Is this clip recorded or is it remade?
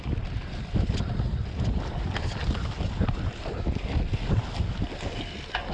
recorded